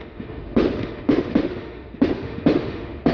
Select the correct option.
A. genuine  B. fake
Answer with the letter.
B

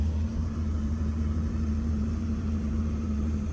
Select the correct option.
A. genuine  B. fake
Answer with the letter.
B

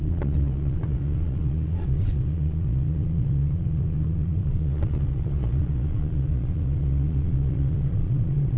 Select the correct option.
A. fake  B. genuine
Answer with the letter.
A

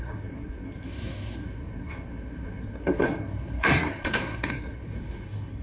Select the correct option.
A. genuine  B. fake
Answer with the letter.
B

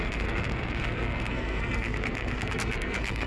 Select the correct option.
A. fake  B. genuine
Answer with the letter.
A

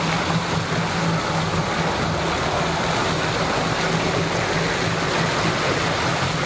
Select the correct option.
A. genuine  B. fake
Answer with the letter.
A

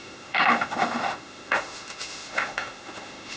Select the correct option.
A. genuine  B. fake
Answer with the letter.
B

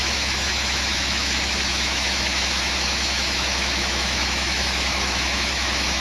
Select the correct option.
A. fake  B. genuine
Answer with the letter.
A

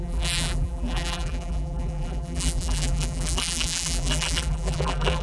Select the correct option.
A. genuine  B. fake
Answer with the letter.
B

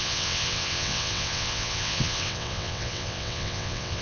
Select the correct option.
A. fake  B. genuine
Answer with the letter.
A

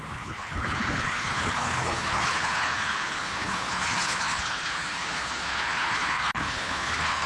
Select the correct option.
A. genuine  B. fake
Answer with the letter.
B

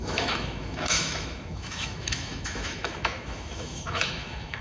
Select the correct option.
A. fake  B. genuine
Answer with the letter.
A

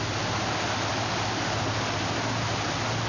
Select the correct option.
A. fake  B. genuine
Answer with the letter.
B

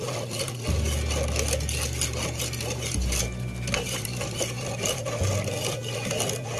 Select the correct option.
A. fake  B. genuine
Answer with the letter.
B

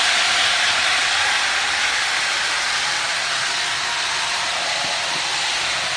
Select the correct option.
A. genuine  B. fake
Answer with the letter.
A